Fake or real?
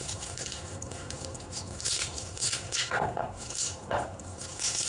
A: fake